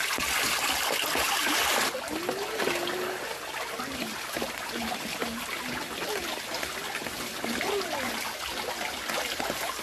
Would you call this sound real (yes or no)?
yes